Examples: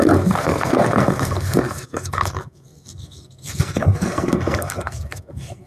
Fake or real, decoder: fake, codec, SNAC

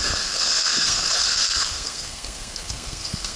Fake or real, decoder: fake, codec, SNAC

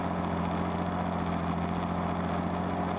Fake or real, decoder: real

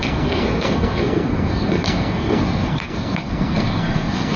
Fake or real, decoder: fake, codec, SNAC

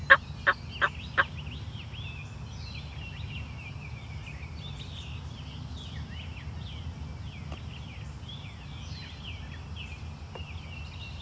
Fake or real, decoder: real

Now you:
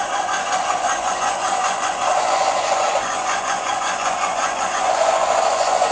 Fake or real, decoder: fake, vocoder, Vocos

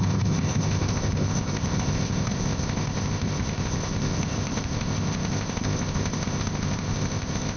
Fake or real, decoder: fake, codec, ZipCodec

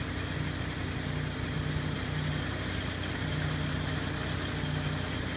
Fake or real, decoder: real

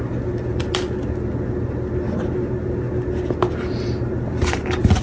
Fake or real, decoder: real